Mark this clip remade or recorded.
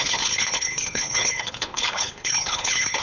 remade